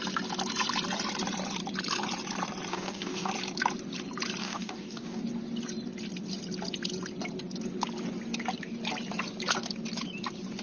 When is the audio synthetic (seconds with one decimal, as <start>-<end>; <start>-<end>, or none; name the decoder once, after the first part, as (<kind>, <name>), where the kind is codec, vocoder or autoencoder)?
2.7-3.3 (codec, DAC); 4.4-5.2